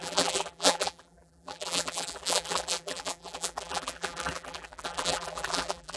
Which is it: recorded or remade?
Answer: remade